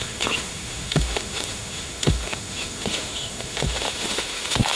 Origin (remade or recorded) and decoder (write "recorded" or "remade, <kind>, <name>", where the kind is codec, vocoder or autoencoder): remade, autoencoder, DAC-VAE